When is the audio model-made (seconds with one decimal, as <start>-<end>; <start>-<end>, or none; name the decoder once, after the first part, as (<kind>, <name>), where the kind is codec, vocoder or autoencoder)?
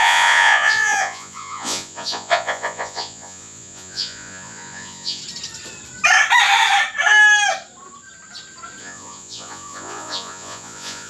0.0-5.2 (vocoder, Vocos); 8.8-11.1